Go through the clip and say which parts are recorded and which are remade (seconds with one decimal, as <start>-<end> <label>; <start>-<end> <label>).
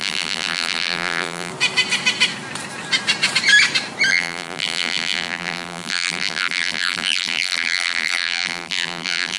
0.0-1.5 remade; 1.5-4.1 recorded; 4.1-9.4 remade